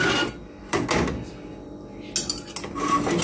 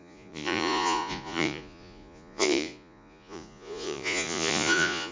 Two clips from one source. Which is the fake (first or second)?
second